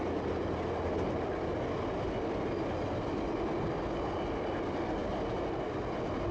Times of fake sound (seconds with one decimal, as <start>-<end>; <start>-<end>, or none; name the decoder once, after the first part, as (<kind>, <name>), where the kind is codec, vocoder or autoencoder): none